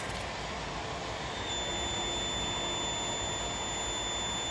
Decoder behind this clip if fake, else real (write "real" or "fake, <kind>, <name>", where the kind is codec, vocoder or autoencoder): real